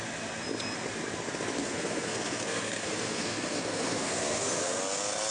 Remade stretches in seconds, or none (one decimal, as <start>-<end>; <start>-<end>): 1.6-4.8